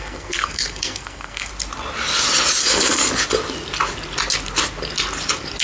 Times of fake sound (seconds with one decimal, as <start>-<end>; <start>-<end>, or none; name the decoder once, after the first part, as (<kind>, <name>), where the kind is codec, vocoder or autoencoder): 0.0-1.5 (codec, SNAC); 2.6-3.0